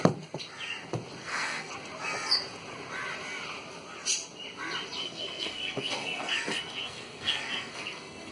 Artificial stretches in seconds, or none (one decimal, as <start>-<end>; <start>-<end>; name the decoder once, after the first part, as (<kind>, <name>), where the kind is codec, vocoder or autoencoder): 1.2-1.7 (codec, SNAC); 5.0-8.3